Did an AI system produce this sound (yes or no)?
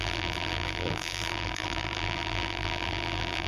yes